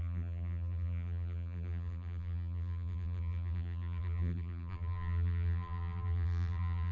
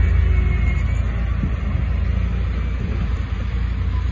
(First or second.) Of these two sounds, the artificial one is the first